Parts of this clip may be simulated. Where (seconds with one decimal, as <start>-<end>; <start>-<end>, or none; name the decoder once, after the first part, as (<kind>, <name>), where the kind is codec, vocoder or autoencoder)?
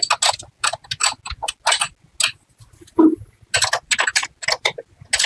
none